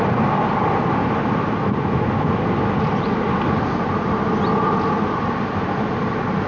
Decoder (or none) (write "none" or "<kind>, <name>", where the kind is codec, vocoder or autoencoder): none